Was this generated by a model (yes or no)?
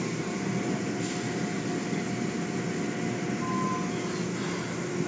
no